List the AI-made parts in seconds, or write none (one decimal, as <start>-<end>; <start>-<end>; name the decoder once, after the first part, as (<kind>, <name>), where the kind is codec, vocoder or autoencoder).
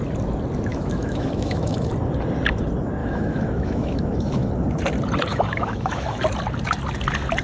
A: 0.7-1.9 (autoencoder, DAC-VAE); 3.0-4.5; 5.3-6.2